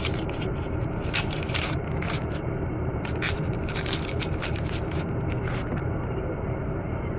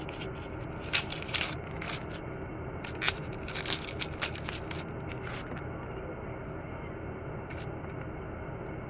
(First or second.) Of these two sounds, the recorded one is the second